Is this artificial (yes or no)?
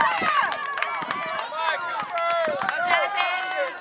no